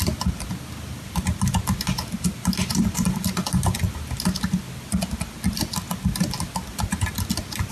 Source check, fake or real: real